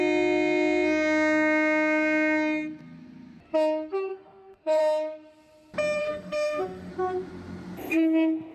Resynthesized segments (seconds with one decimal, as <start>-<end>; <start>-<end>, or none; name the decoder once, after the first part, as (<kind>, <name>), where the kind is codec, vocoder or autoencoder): 4.1-4.8 (autoencoder, DAC-VAE); 6.0-6.9